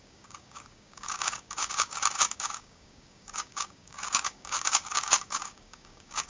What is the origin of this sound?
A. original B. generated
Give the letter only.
B